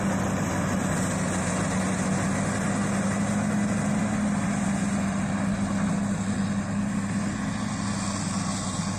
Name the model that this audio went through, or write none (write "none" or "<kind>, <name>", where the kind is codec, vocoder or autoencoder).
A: none